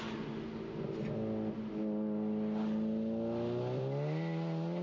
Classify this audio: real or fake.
real